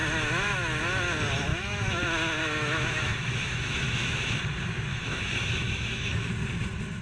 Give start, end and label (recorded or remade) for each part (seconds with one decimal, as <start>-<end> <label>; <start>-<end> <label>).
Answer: 0.0-0.8 remade; 0.8-1.5 recorded; 1.5-2.0 remade; 2.0-2.4 recorded; 2.4-4.4 remade; 4.4-4.9 recorded; 4.9-6.3 remade; 6.3-7.0 recorded